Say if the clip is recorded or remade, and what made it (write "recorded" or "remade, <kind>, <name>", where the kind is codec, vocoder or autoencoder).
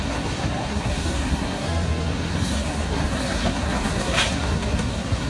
remade, codec, SNAC